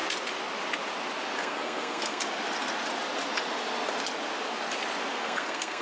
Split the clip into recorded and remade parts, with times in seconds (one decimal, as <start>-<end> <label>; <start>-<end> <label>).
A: 0.0-1.4 recorded; 1.4-2.2 remade; 2.2-5.1 recorded; 5.1-5.8 remade

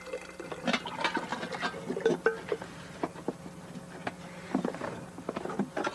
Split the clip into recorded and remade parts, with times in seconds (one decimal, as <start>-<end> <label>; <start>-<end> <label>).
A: 0.0-5.9 recorded